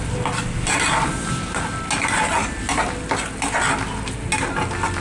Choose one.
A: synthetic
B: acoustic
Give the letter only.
B